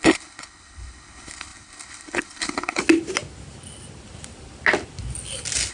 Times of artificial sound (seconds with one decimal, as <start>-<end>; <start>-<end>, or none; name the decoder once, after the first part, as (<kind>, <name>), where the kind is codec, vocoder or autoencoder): 0.0-2.8 (codec, HILCodec)